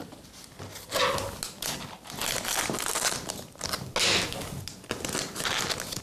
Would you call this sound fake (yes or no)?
no